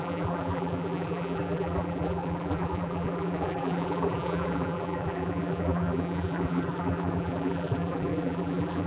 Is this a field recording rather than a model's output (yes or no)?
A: no